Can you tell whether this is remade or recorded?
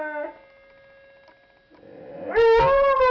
recorded